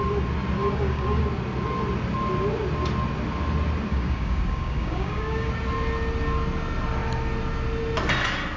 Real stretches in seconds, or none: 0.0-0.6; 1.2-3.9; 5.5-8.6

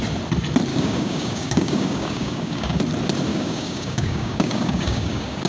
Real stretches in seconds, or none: 0.0-0.7; 2.8-3.3

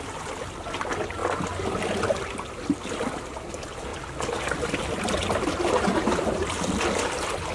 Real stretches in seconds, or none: 0.0-7.5

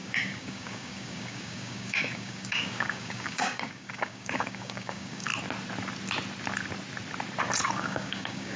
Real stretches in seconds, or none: 5.3-7.7

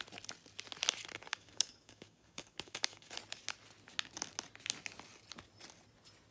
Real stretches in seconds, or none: 0.0-1.3; 3.1-6.3

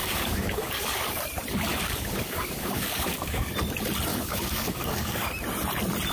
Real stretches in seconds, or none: 1.2-1.7; 3.5-4.1; 5.3-6.1